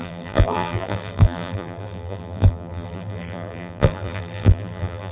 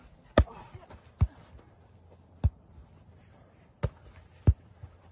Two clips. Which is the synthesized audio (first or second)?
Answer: first